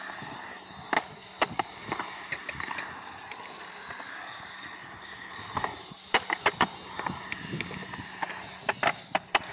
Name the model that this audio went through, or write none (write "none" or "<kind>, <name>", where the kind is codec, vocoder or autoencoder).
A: vocoder, BigVGAN v2